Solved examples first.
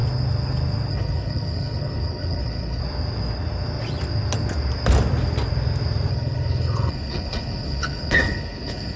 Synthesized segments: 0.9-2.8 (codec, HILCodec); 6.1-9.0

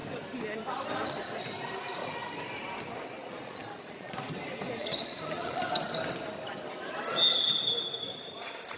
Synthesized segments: 3.2-4.1 (vocoder, Vocos); 4.8-5.6

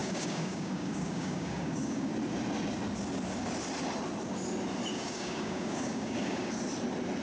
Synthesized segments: 0.0-2.1 (codec, DAC); 4.9-6.5

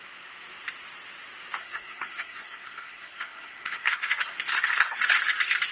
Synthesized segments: 1.6-5.0 (codec, SNAC)

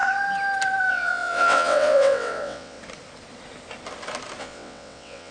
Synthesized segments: 0.9-2.8 (vocoder, WaveNeXt); 4.4-5.3

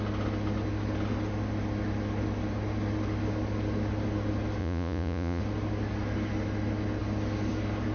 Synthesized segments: 4.6-5.4 (vocoder, Vocos)

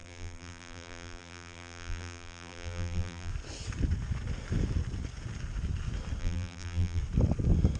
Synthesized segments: 0.0-3.3 (vocoder, BigVGAN v2); 6.2-7.0